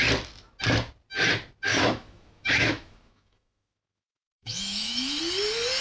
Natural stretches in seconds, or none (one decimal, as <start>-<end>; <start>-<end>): 0.0-1.7; 5.2-5.8